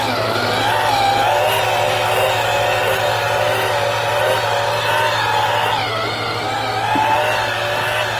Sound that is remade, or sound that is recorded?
recorded